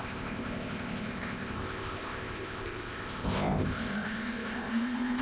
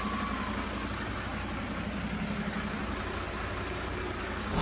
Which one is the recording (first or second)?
second